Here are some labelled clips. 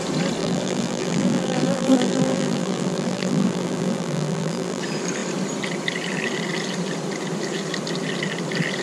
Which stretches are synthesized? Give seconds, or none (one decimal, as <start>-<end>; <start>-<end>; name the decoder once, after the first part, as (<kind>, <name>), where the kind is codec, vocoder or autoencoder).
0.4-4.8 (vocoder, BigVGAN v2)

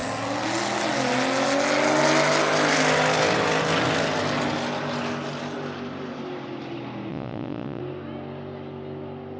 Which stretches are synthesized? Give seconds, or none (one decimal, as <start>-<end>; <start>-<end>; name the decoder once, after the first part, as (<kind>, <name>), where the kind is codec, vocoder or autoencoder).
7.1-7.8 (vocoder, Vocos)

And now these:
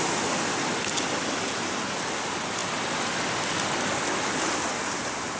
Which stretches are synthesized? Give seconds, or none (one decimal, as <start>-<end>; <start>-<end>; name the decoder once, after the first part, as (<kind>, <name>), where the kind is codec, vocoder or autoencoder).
none

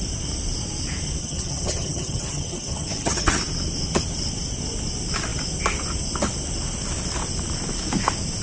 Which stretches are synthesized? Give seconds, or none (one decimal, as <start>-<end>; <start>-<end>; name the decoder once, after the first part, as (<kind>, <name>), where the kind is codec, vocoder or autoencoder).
1.2-3.4 (vocoder, HiFi-GAN)

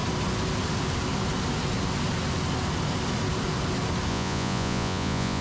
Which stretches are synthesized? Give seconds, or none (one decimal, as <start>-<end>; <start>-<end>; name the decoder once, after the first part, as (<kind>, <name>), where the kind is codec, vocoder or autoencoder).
4.1-5.4 (vocoder, Vocos)

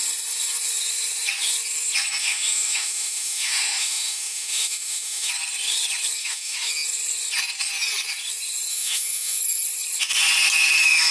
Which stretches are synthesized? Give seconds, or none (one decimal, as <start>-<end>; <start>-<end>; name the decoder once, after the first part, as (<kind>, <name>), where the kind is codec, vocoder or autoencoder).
2.2-5.3 (autoencoder, DAC-VAE); 6.2-6.7; 8.7-9.4

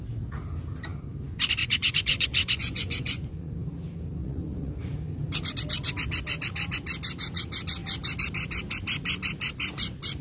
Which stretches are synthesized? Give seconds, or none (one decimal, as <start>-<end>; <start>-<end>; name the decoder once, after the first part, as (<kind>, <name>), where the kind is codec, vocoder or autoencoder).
1.6-3.5 (vocoder, Vocos); 4.2-4.7

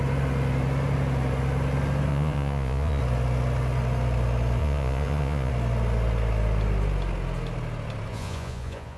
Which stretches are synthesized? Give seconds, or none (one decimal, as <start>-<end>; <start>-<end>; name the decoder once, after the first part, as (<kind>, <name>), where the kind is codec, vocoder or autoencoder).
2.1-3.0 (vocoder, Vocos); 4.6-5.5; 8.1-9.0